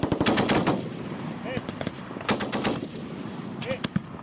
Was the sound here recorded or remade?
recorded